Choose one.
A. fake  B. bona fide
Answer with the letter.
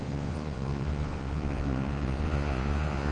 A